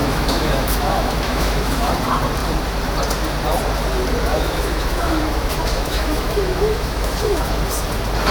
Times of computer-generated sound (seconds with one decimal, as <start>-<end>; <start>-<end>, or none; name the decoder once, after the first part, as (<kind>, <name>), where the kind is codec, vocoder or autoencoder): 0.0-1.9 (autoencoder, DAC-VAE); 4.3-7.6